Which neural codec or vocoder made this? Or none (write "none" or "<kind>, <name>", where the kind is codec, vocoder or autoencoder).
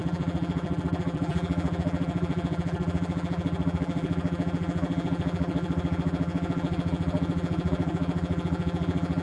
vocoder, BigVGAN v2